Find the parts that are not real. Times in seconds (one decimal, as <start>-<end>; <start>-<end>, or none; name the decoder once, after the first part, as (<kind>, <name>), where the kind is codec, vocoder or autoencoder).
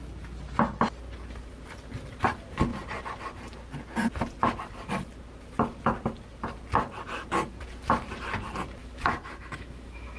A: 8.8-10.2 (autoencoder, DAC-VAE)